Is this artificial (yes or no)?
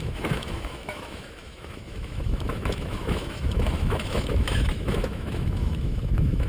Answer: yes